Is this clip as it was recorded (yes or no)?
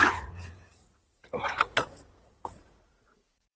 no